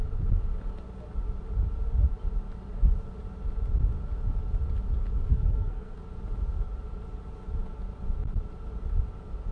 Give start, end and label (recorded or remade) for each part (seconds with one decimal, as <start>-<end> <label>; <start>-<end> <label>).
0.0-5.3 recorded; 5.3-6.0 remade; 6.0-9.5 recorded